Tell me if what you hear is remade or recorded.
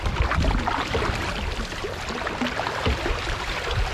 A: recorded